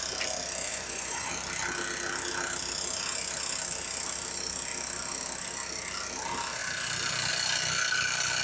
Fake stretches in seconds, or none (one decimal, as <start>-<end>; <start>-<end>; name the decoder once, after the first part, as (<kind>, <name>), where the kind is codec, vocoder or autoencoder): 0.7-1.3 (vocoder, Vocos)